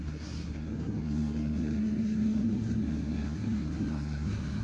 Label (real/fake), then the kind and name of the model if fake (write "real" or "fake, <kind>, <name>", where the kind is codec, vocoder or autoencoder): fake, codec, SNAC